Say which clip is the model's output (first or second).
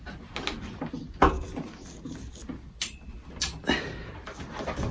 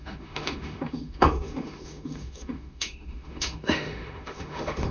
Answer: second